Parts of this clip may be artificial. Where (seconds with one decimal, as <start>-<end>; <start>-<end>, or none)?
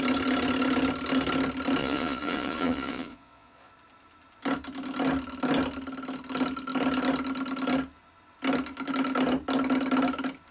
1.8-3.7